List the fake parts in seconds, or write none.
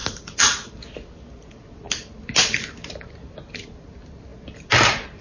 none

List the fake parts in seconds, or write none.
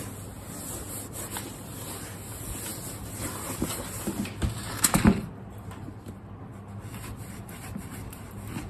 none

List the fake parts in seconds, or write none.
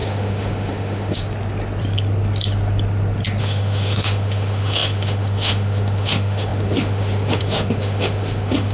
0.0-1.2 (autoencoder, DAC-VAE); 3.4-8.7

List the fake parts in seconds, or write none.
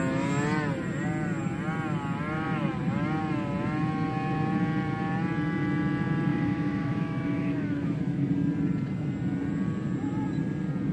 6.3-8.3 (autoencoder, DAC-VAE)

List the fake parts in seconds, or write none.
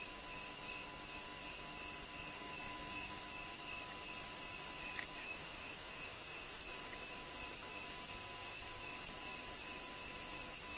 2.4-3.2 (autoencoder, DAC-VAE); 5.2-6.6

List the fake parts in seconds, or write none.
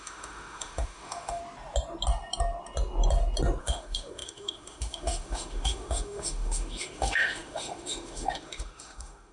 0.0-1.4 (autoencoder, DAC-VAE); 3.6-9.3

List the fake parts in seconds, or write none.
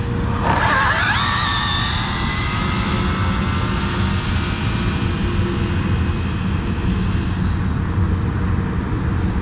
2.3-3.0 (autoencoder, DAC-VAE)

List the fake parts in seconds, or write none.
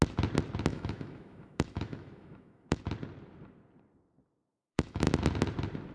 0.7-2.8 (autoencoder, DAC-VAE); 4.5-5.1